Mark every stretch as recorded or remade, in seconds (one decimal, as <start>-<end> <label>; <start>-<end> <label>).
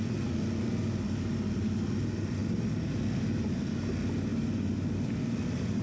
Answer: 0.0-2.4 recorded; 2.4-3.7 remade; 3.7-5.8 recorded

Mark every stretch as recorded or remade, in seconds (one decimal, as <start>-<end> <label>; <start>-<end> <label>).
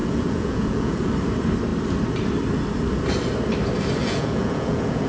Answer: 0.0-1.1 remade; 1.1-4.0 recorded; 4.0-5.1 remade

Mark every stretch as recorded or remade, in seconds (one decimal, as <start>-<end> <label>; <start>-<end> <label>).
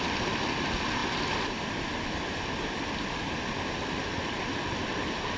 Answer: 0.0-5.4 recorded